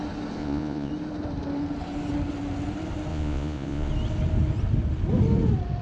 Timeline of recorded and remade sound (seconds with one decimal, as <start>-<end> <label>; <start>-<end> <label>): 0.0-0.4 recorded; 0.4-0.9 remade; 0.9-3.1 recorded; 3.1-3.9 remade; 3.9-5.8 recorded